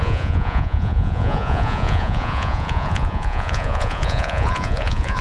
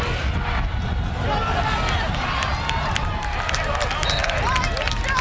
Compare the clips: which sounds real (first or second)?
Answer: second